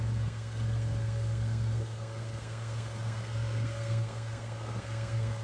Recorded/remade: remade